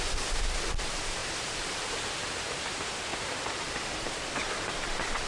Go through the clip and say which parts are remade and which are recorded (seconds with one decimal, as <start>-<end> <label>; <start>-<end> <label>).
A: 0.0-3.1 recorded; 3.1-4.3 remade; 4.3-5.3 recorded